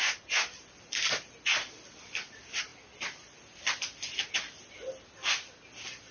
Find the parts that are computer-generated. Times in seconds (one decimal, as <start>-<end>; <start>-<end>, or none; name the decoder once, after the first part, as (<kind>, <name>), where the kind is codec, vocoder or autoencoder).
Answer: none